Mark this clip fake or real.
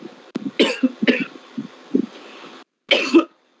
real